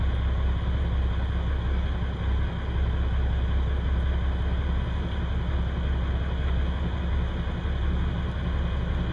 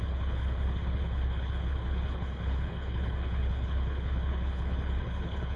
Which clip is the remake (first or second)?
second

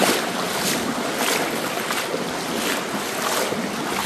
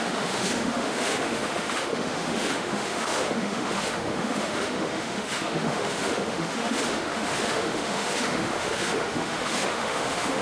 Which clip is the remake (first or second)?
second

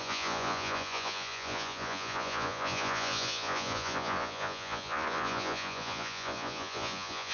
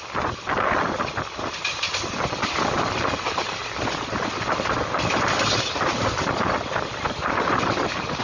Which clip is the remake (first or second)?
first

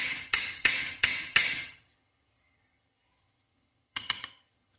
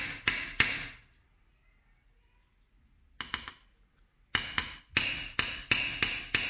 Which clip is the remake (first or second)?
first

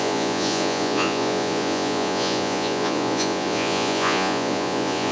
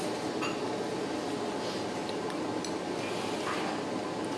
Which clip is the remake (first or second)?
first